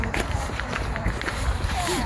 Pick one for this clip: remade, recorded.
remade